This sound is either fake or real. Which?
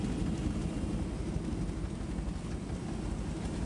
real